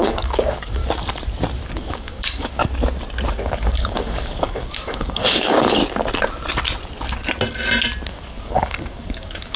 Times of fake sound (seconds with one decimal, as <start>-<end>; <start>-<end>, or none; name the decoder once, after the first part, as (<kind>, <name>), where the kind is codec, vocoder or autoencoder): 0.0-0.8 (codec, DAC); 1.8-2.6; 3.3-5.8; 8.1-9.6